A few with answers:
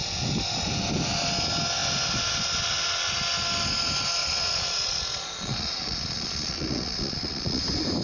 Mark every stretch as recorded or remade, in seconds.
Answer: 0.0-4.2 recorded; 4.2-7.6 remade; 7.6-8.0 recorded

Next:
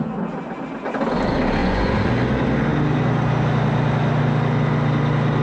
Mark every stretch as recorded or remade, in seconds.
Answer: 0.0-1.6 recorded; 1.6-2.1 remade; 2.1-5.4 recorded

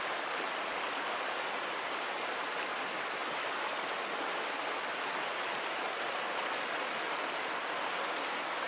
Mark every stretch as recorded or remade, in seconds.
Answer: 0.0-8.7 recorded

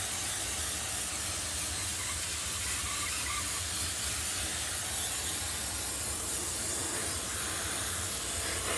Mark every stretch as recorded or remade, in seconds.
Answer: 0.0-8.8 recorded

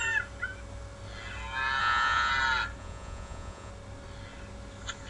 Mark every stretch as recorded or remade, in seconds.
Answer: 0.0-1.8 recorded; 1.8-2.3 remade; 2.3-2.8 recorded; 2.8-3.7 remade; 3.7-5.1 recorded

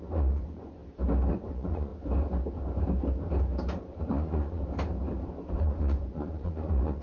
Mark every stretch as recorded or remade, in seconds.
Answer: 0.0-0.8 remade; 0.8-1.3 recorded; 1.3-1.9 remade; 1.9-4.0 recorded; 4.0-4.6 remade; 4.6-5.5 recorded; 5.5-7.0 remade

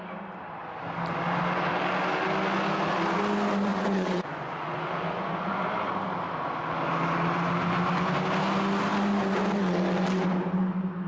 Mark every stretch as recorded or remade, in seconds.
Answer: 0.0-3.7 recorded; 3.7-5.6 remade; 5.6-11.1 recorded